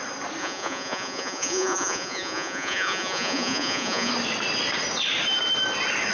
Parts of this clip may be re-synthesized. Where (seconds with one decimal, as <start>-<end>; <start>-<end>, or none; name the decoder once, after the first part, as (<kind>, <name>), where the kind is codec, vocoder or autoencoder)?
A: 0.4-4.1 (vocoder, Vocos)

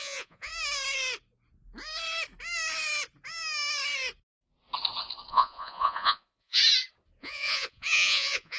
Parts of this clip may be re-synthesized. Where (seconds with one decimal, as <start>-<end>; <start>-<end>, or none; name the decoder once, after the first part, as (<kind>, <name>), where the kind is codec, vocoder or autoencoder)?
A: 0.0-0.5 (vocoder, Vocos); 5.3-6.6; 7.2-8.6

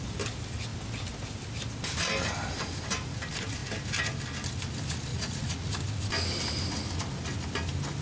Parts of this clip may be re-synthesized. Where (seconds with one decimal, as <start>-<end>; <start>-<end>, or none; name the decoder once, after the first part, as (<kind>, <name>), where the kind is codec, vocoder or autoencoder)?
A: 5.1-5.7 (vocoder, Vocos)

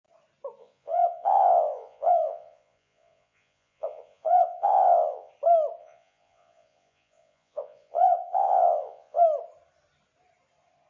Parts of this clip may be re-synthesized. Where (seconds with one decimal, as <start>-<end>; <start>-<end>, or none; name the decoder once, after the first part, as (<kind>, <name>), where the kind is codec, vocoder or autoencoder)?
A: 0.6-5.3 (vocoder, Vocos); 5.8-9.2

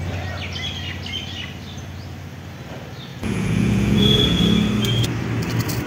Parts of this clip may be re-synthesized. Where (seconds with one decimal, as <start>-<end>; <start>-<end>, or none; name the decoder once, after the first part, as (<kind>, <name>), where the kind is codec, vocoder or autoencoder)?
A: 3.1-4.4 (vocoder, Vocos)

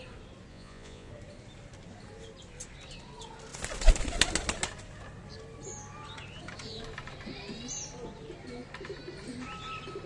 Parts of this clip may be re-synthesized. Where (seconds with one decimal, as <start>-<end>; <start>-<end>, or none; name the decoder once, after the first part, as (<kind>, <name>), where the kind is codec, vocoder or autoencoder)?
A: 0.5-1.1 (vocoder, Vocos)

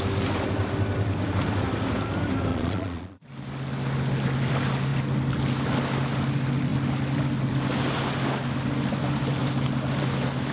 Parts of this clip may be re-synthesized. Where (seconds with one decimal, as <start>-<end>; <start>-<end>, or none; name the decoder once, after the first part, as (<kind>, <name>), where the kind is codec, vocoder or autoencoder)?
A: 2.5-3.3 (vocoder, Vocos)

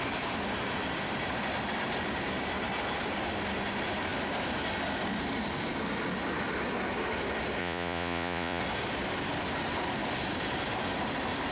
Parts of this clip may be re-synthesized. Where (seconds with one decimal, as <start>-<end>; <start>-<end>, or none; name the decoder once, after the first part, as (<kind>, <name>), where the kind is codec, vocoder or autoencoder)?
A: 7.6-8.6 (vocoder, Vocos)